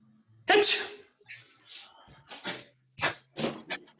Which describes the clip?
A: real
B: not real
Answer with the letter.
A